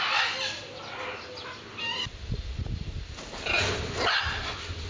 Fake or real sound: real